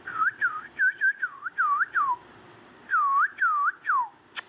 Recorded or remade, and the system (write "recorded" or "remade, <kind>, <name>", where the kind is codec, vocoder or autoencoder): recorded